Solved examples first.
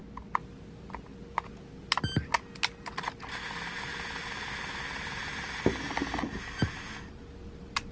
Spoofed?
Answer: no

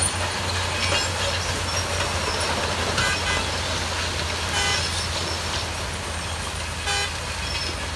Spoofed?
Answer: no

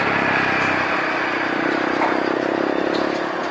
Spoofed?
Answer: no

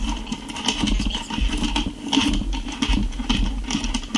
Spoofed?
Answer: no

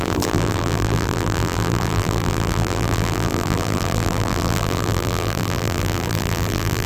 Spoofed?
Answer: yes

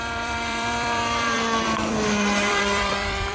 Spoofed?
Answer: yes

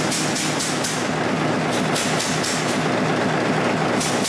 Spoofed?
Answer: no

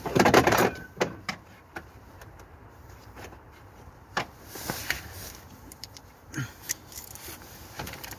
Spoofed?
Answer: yes